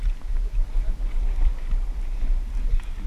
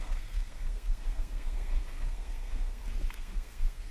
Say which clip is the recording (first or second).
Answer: first